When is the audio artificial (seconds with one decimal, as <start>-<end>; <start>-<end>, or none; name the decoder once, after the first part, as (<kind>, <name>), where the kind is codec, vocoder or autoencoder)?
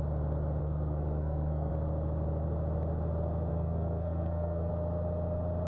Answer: 0.6-1.7 (codec, SNAC); 3.5-4.7